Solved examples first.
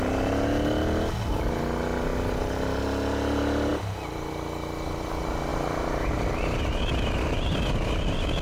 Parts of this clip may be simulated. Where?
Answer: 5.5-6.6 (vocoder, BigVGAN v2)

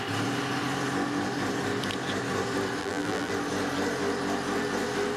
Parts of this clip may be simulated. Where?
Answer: 2.8-3.3 (vocoder, BigVGAN v2)